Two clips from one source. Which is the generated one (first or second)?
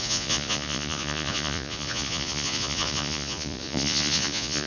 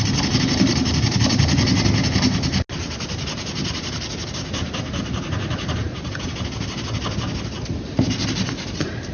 first